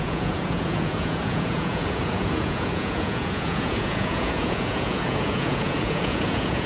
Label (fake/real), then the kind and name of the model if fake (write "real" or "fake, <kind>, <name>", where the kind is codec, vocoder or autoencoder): fake, vocoder, Vocos